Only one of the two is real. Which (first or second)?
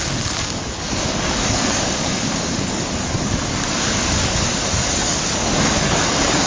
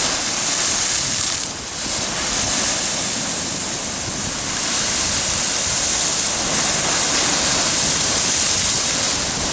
second